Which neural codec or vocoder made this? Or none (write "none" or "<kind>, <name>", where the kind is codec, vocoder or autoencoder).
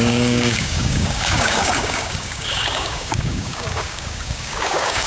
codec, DAC